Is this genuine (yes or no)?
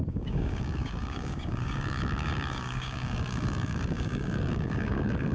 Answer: no